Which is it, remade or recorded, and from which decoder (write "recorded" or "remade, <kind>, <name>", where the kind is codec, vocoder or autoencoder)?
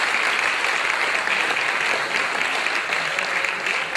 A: recorded